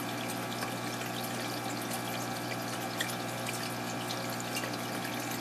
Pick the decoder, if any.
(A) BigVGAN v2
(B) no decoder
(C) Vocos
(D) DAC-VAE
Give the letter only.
B